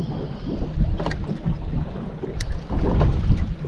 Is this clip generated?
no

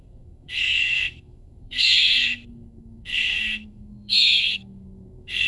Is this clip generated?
yes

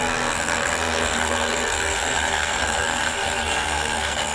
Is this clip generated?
yes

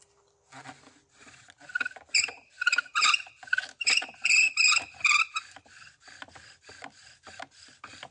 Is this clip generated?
no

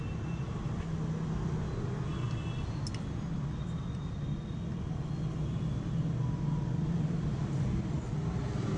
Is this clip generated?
no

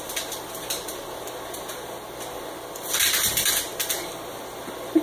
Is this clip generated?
no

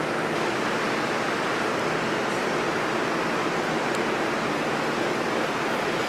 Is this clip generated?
no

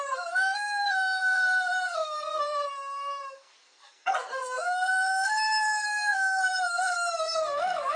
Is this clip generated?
yes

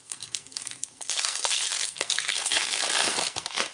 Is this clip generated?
yes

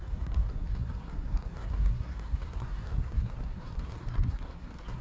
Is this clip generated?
yes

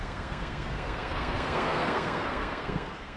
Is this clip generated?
yes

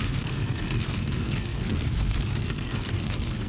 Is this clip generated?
yes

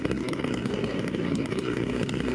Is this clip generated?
yes